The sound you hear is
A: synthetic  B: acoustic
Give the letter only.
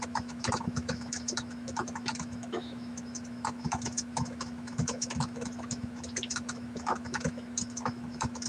A